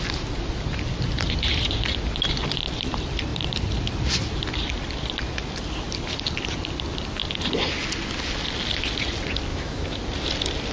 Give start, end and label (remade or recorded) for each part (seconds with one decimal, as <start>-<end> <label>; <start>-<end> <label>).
0.0-9.5 recorded; 9.5-10.0 remade; 10.0-10.7 recorded